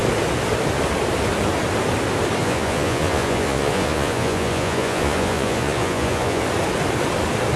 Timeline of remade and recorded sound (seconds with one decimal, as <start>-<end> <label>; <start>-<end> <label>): 0.0-2.4 recorded; 2.4-6.4 remade; 6.4-7.6 recorded